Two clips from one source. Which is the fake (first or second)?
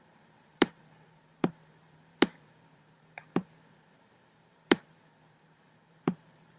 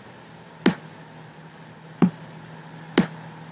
first